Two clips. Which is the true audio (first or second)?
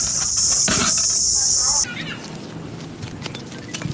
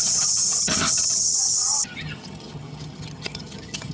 first